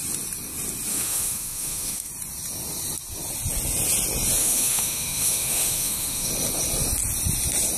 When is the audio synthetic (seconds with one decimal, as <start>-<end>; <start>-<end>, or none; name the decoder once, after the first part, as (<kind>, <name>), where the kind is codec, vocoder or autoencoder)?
0.9-2.1 (autoencoder, DAC-VAE); 4.4-6.3